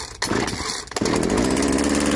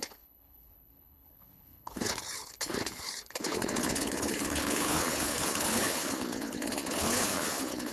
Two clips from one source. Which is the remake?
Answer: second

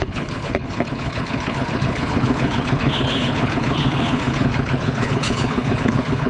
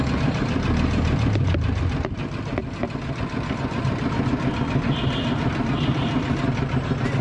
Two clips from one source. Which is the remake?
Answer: first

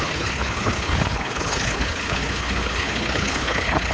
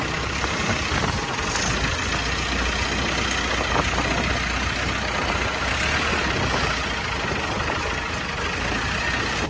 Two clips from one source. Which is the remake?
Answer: first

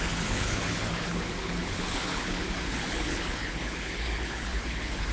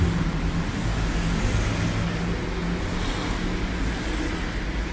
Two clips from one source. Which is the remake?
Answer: first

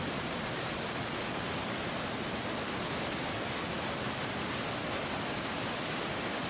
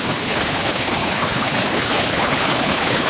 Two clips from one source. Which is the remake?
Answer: second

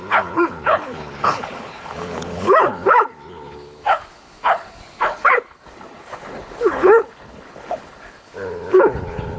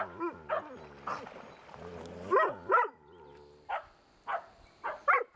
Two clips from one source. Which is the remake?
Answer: first